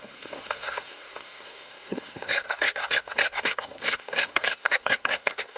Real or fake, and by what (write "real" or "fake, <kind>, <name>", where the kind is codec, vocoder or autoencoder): fake, codec, SNAC